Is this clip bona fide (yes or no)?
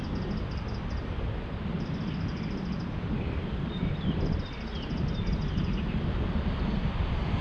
yes